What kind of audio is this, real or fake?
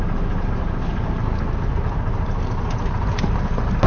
real